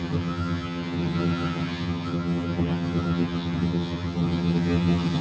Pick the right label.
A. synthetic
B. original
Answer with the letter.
A